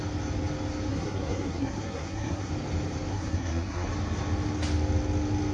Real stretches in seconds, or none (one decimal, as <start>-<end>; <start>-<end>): 0.0-0.9; 2.5-3.1; 3.9-5.5